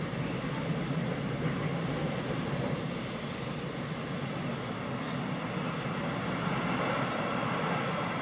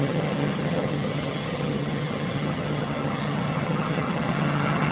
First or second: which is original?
first